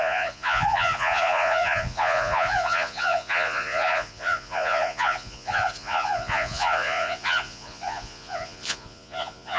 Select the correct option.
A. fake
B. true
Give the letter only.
A